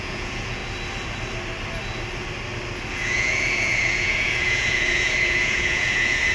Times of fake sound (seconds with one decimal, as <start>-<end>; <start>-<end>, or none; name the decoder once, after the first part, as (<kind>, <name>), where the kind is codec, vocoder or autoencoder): 0.0-0.6 (vocoder, Vocos); 2.9-6.3